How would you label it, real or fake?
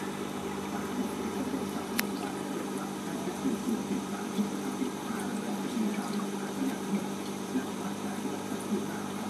fake